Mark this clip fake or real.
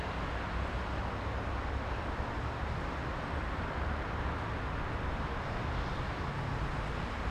real